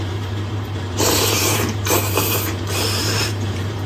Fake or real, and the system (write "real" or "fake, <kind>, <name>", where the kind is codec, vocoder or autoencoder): fake, vocoder, BigVGAN v2